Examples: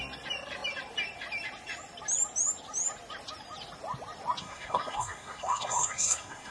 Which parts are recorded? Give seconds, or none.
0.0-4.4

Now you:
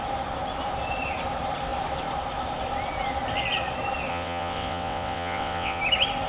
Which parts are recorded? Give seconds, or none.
0.0-4.1; 5.8-6.3

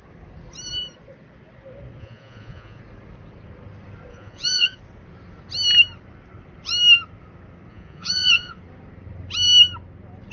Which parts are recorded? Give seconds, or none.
0.0-2.0; 2.8-4.1; 4.8-7.7; 8.6-10.3

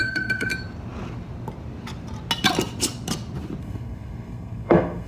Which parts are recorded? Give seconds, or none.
0.5-3.6

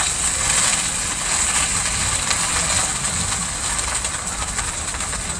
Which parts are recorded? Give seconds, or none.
0.0-5.4

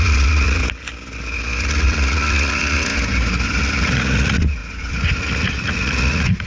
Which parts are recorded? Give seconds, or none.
0.6-1.6; 2.9-3.6; 4.6-5.2